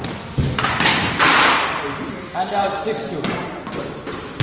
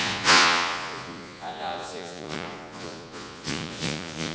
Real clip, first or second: first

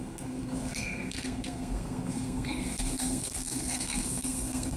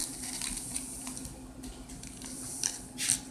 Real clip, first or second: second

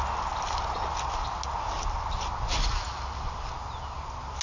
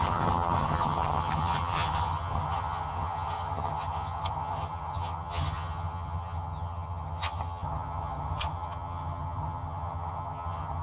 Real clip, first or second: first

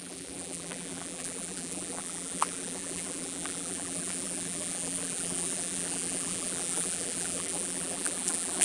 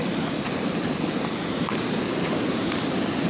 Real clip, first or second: second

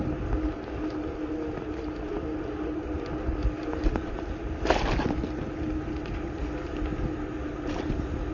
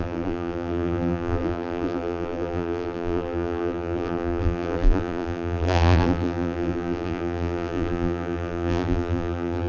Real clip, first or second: first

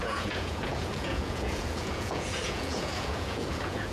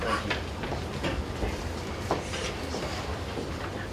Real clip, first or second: second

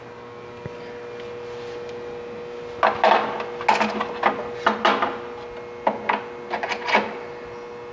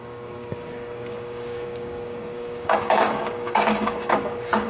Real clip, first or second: first